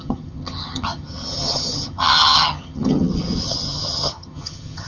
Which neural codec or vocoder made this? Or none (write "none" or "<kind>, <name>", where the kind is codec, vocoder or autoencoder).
vocoder, HiFi-GAN